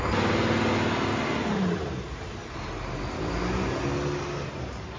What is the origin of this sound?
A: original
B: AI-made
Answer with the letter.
A